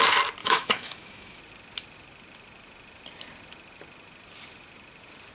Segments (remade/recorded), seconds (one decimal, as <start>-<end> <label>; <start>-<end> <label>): 0.0-0.4 recorded; 0.4-1.4 remade; 1.4-5.3 recorded